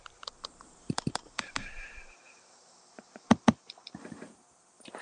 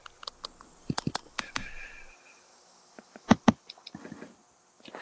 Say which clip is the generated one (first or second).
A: first